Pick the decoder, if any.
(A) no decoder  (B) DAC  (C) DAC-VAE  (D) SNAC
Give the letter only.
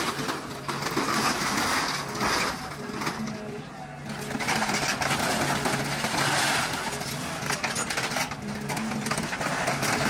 A